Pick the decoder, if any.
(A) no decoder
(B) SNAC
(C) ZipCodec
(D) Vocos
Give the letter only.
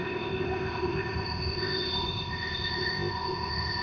C